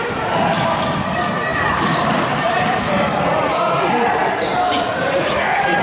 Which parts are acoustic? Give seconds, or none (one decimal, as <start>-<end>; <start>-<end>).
4.5-5.0